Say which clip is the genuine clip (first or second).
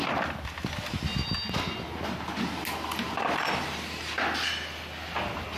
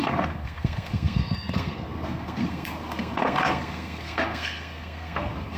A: first